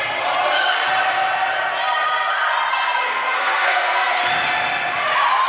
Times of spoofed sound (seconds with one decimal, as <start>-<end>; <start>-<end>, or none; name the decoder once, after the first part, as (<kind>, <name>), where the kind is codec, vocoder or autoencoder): 2.7-4.1 (codec, SNAC)